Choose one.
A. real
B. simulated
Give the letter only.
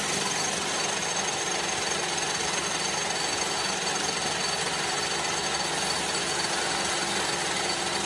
A